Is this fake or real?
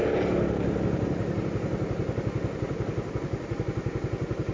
real